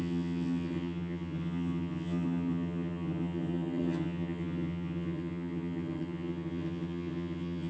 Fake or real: fake